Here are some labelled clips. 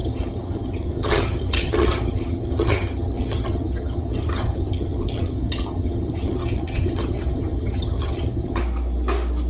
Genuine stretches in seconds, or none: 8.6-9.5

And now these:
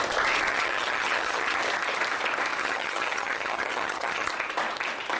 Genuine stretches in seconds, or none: 0.0-0.5; 1.6-2.6; 4.3-5.2

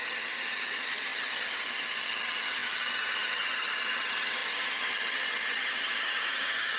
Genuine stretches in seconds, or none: none

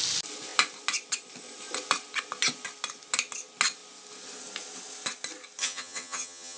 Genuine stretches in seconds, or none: 0.0-5.6